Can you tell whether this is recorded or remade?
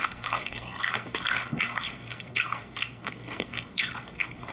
remade